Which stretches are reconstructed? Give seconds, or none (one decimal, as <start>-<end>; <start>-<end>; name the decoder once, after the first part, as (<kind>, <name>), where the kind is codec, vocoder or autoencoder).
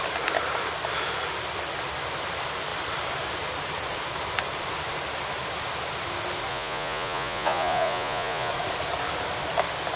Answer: 6.5-8.5 (vocoder, Vocos)